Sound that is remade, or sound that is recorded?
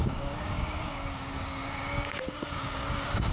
remade